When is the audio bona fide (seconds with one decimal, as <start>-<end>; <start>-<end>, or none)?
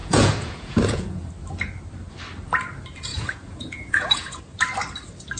1.3-3.1; 4.4-5.4